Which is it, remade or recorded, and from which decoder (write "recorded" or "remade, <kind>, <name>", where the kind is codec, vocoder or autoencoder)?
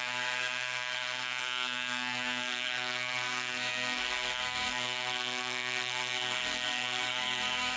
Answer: remade, codec, SNAC